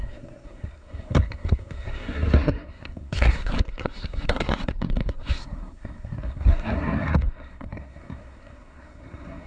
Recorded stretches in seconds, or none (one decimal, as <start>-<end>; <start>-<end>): none